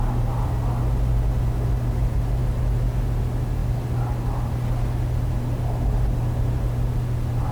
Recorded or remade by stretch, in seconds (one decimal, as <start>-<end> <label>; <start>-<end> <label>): 0.0-7.5 recorded